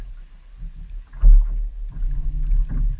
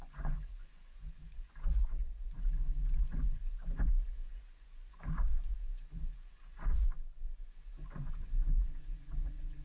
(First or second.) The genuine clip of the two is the first